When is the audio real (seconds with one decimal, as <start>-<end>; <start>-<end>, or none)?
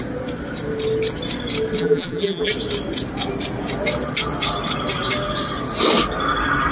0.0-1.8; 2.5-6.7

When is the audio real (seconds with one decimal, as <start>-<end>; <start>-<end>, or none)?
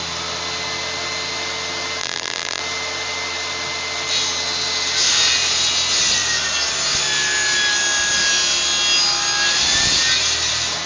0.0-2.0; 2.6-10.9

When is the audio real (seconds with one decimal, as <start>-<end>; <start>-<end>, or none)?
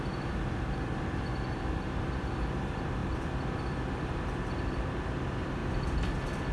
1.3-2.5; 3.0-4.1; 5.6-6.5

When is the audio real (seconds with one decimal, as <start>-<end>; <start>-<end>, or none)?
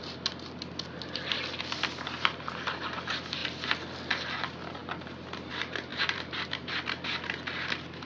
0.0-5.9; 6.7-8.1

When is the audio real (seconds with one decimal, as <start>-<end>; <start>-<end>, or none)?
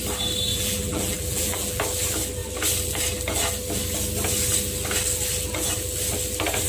0.0-0.5; 1.8-6.7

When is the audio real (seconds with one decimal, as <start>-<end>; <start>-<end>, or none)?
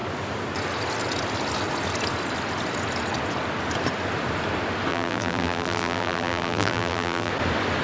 0.0-4.9; 7.3-7.8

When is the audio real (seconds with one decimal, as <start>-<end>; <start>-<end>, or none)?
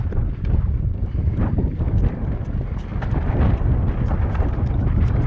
2.9-4.3